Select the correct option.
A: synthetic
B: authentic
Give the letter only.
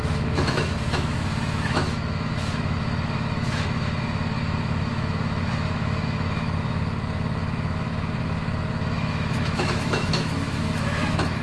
A